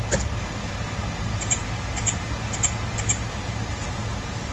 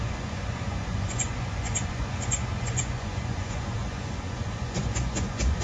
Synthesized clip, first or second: second